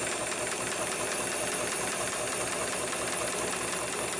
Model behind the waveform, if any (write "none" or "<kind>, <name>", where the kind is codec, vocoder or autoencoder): none